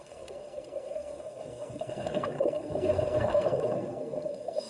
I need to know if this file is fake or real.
fake